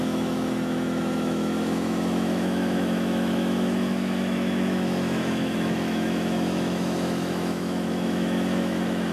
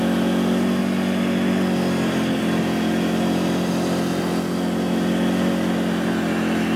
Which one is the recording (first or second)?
second